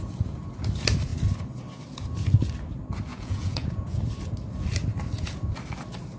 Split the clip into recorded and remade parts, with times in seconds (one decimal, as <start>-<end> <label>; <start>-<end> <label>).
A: 0.0-3.1 recorded; 3.1-4.0 remade; 4.0-6.2 recorded